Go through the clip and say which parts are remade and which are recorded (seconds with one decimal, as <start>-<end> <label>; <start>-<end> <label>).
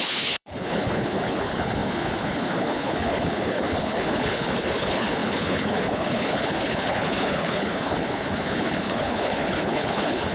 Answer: 0.0-10.3 remade